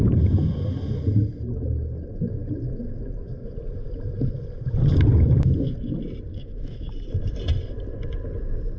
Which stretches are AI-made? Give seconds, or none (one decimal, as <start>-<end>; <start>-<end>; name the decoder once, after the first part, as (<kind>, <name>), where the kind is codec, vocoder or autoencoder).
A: 6.3-6.9 (autoencoder, DAC-VAE)